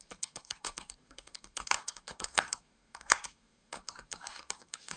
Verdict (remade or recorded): remade